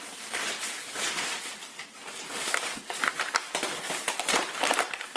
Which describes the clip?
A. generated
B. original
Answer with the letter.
A